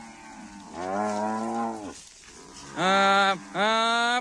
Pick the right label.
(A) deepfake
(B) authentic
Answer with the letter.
B